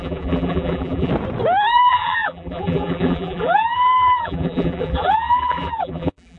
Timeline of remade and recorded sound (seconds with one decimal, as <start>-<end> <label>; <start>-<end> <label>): 0.0-1.1 remade; 1.1-1.7 recorded; 1.7-6.4 remade